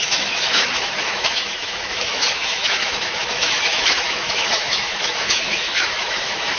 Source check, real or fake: fake